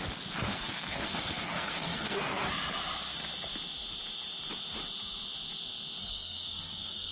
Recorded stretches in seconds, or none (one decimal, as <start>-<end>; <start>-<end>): 0.0-0.5; 2.4-6.0